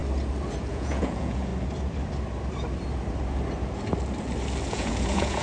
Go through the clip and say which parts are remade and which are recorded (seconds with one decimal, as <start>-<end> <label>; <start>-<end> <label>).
0.0-0.7 recorded; 0.7-1.5 remade; 1.5-4.7 recorded; 4.7-5.4 remade